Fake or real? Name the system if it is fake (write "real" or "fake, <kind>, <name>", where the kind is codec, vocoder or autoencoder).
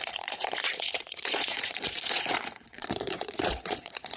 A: fake, vocoder, Vocos